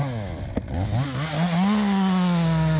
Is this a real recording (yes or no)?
yes